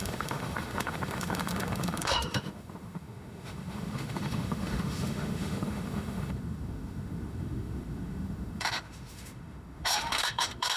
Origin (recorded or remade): remade